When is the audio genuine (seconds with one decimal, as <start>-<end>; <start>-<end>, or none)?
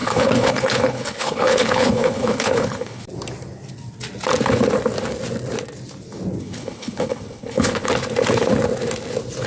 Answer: 3.0-6.4; 7.9-9.5